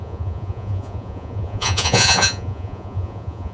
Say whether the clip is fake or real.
fake